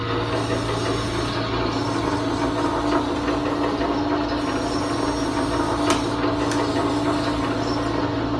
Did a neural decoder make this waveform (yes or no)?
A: no